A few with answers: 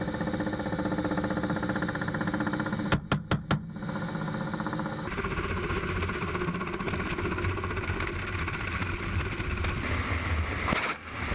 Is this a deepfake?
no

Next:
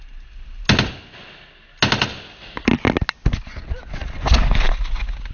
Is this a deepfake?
no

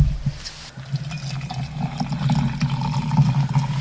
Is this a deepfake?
no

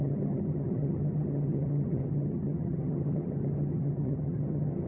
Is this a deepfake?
yes